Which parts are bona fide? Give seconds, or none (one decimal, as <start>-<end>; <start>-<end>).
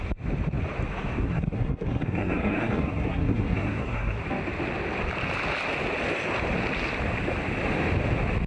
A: 0.0-1.2; 4.2-8.5